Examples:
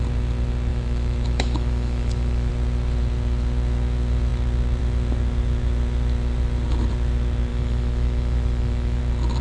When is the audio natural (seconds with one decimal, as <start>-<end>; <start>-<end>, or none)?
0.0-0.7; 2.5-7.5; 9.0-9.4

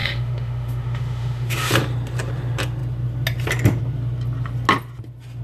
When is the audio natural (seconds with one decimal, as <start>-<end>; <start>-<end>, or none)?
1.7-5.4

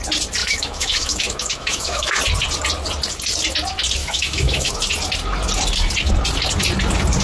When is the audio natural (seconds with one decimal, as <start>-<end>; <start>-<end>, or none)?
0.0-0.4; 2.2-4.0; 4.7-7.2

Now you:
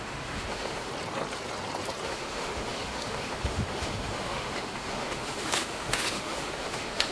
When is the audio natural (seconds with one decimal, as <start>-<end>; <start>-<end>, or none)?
0.9-2.0

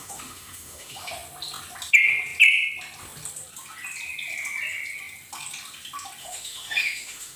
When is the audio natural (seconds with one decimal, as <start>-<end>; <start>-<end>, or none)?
1.1-6.2